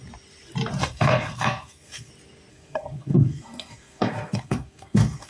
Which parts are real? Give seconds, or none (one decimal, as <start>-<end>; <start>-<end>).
0.0-0.8; 2.1-2.5